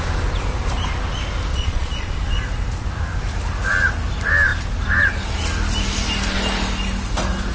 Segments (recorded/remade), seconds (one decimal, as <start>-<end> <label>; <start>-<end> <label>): 0.0-1.5 recorded; 1.5-2.1 remade; 2.1-7.5 recorded